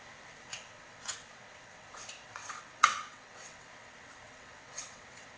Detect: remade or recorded remade